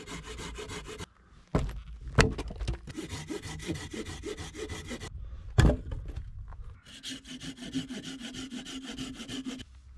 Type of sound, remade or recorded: recorded